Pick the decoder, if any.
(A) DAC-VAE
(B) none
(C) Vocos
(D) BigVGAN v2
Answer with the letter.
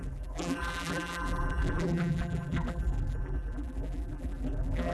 D